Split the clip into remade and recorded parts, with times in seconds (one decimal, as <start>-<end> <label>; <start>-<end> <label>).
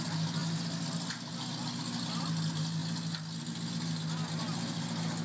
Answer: 0.0-5.2 recorded